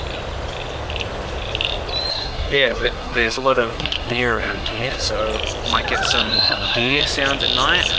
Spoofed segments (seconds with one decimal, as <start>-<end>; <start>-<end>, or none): 2.1-5.1; 6.3-7.0